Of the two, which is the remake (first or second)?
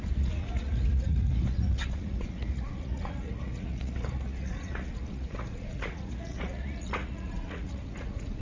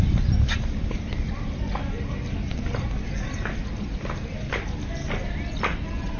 first